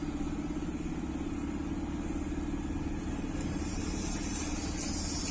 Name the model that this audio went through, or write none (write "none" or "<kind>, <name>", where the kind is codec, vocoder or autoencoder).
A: none